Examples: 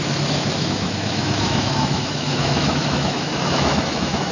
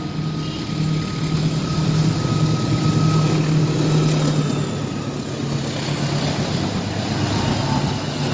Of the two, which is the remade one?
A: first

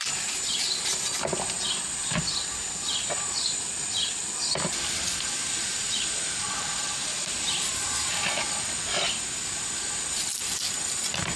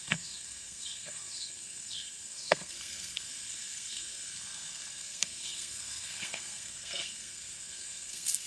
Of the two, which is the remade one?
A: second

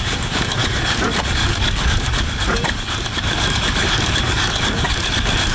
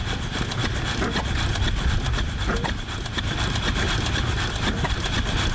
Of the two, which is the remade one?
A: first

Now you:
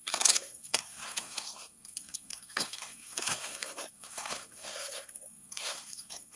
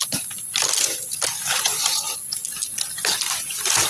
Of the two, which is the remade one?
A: first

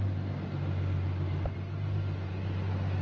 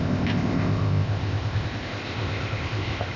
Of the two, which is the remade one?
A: second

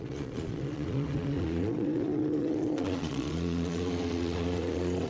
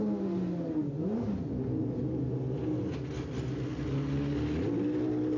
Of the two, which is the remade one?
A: first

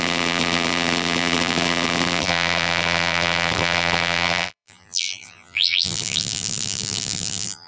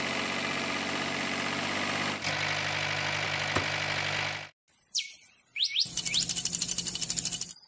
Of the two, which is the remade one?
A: first